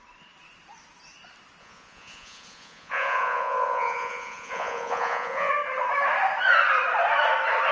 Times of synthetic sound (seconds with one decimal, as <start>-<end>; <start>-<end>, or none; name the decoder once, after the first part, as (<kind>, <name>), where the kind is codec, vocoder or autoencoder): 1.6-5.5 (vocoder, Vocos)